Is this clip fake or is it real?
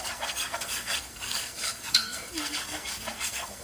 fake